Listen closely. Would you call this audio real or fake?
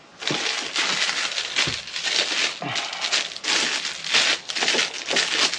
real